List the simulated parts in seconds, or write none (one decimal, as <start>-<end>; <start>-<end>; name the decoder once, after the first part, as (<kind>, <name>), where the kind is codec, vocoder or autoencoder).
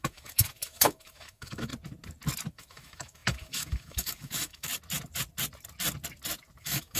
0.0-1.7 (autoencoder, DAC-VAE); 2.5-4.7; 6.6-7.0